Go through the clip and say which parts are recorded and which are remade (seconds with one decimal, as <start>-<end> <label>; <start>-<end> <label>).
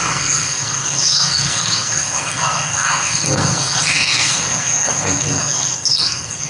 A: 0.0-6.5 remade